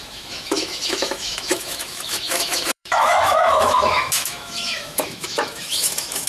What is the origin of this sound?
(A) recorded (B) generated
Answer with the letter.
B